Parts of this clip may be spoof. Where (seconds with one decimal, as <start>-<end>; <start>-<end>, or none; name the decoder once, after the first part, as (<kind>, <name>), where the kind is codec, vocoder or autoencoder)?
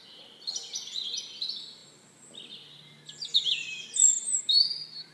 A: none